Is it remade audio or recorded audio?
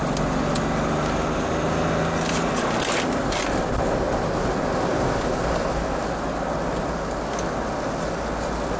recorded